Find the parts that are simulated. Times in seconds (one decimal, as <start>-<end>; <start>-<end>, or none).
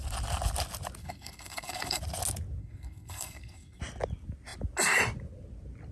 1.0-2.0; 2.6-3.8